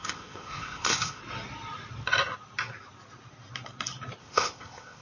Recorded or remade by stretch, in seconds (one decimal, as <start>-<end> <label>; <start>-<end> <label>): 0.0-1.2 remade; 1.2-4.2 recorded; 4.2-5.0 remade